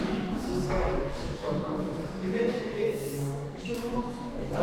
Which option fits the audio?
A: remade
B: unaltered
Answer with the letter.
A